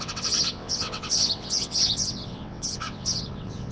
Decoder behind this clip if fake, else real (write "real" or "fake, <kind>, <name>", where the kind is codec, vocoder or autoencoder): fake, vocoder, WaveNeXt